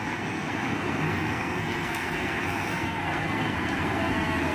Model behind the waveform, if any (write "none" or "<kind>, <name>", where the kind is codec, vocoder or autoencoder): codec, SNAC